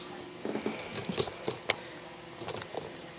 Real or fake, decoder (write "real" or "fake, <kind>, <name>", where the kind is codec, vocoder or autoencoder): real